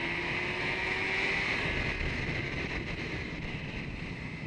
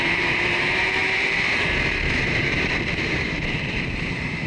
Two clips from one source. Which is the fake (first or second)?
second